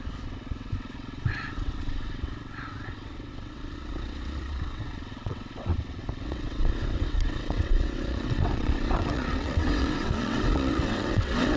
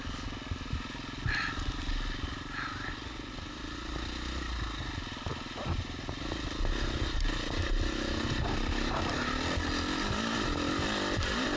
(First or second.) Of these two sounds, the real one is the second